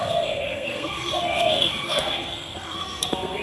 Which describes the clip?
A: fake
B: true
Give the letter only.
A